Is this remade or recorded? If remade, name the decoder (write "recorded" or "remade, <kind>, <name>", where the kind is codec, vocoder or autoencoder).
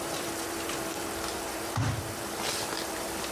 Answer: remade, vocoder, BigVGAN v2